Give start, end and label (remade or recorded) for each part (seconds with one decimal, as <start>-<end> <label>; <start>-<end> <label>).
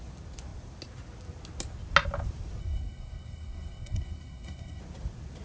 0.0-2.6 recorded; 2.6-4.8 remade; 4.8-5.4 recorded